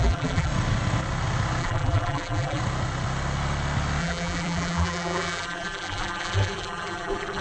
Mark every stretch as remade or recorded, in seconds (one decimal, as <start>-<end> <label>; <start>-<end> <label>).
0.0-0.5 remade; 0.5-1.6 recorded; 1.6-2.6 remade; 2.6-4.0 recorded; 4.0-7.4 remade